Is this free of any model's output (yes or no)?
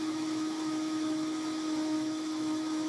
no